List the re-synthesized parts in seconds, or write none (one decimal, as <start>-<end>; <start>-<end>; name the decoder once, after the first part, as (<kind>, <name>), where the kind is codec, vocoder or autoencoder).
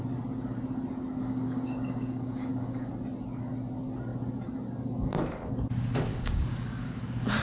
1.2-2.9 (codec, DAC); 6.1-6.9